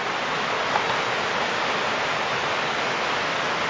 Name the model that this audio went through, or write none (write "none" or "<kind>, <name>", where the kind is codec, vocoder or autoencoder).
none